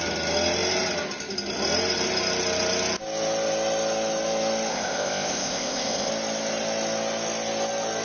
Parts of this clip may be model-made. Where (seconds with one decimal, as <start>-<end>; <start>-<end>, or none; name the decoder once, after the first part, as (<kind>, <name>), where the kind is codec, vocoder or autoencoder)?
4.7-6.1 (codec, ZipCodec)